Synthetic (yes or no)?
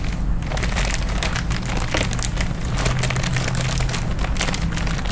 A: no